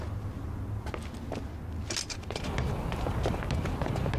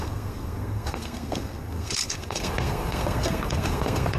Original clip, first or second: first